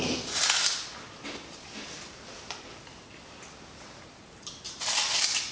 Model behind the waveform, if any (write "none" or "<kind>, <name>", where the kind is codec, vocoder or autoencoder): none